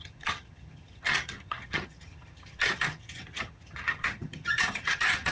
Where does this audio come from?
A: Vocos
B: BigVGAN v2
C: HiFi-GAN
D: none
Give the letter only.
C